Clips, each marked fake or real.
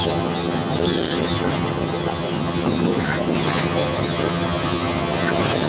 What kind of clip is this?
fake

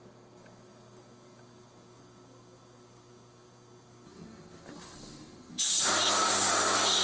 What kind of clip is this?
real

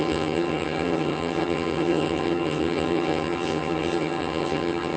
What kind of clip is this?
fake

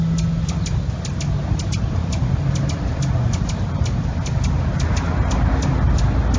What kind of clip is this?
real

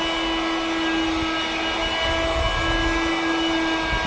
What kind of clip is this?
real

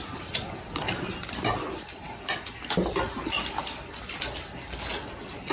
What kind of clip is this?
real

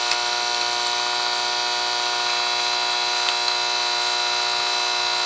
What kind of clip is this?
real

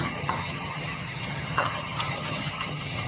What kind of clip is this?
fake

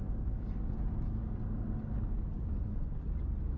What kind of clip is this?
real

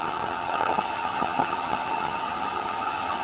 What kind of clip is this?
fake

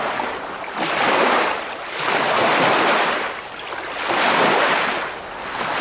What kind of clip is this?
real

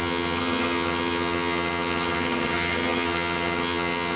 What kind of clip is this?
fake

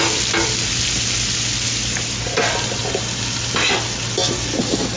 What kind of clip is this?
real